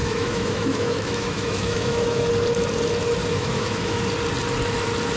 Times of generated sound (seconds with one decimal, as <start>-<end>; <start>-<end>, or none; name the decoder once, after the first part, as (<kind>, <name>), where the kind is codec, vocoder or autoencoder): 0.0-2.3 (autoencoder, DAC-VAE); 3.2-4.0